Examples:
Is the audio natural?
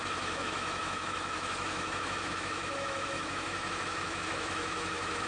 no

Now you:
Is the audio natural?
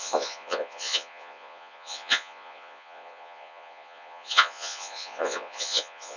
no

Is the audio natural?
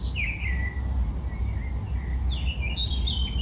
yes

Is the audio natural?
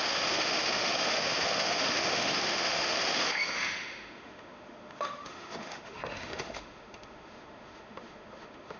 no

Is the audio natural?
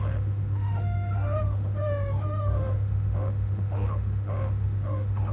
no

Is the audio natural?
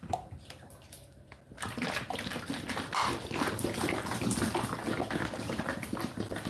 yes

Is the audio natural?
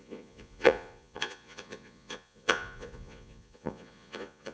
no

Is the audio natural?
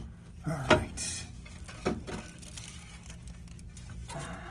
yes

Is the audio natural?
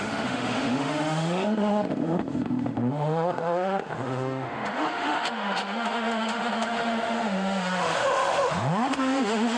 no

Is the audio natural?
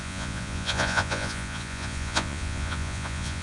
no